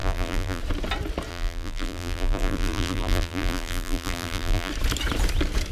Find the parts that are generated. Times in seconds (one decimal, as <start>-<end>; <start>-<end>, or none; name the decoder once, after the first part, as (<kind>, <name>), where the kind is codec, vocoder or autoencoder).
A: 0.0-0.6 (vocoder, BigVGAN v2); 1.3-4.7